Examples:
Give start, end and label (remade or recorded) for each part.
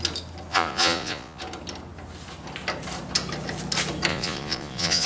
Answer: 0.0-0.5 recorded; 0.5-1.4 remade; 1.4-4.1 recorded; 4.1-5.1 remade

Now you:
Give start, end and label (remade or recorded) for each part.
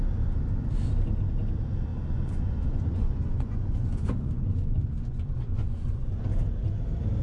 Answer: 0.0-1.9 recorded; 1.9-6.2 remade; 6.2-7.2 recorded